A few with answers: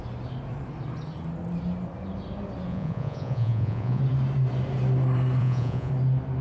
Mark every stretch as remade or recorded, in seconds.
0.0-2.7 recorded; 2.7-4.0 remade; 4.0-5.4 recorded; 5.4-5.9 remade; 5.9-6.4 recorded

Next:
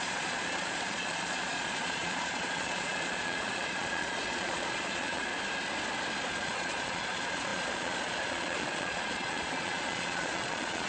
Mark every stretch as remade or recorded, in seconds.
0.0-5.3 remade; 5.3-6.3 recorded; 6.3-10.9 remade

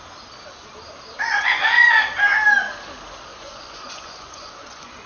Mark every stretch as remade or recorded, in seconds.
0.0-1.2 recorded; 1.2-1.9 remade; 1.9-3.3 recorded; 3.3-5.1 remade

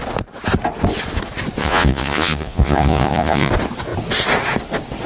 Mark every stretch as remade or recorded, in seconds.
0.0-1.6 recorded; 1.6-3.5 remade; 3.5-5.1 recorded

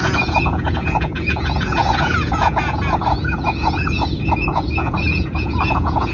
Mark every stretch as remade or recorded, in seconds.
0.0-6.1 remade